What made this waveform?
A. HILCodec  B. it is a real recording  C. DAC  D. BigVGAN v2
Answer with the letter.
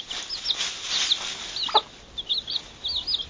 B